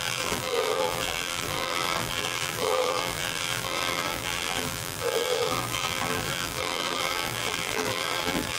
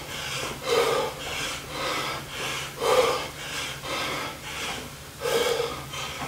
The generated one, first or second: first